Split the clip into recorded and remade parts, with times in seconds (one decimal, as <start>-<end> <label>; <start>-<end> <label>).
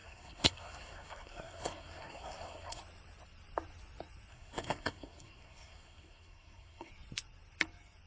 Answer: 0.0-2.8 remade; 2.8-4.3 recorded; 4.3-6.9 remade; 6.9-8.1 recorded